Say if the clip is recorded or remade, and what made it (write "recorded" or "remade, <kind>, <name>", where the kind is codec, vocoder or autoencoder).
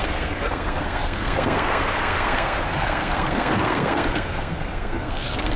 remade, codec, SNAC